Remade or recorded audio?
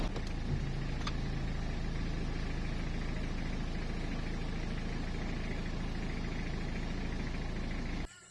recorded